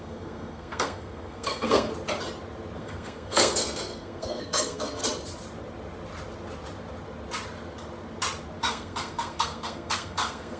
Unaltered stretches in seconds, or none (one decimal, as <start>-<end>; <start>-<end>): 1.9-2.8; 5.0-8.6